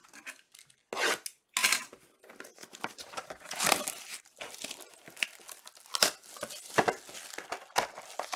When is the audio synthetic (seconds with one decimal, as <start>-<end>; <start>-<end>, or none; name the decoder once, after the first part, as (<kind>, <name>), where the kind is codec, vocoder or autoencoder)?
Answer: 1.6-5.4 (vocoder, BigVGAN v2)